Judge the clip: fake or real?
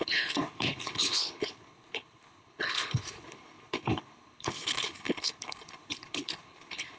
fake